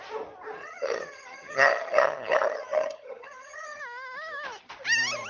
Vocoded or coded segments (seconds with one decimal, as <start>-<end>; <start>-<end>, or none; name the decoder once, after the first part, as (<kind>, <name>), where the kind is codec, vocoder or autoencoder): 0.6-3.8 (vocoder, HiFi-GAN)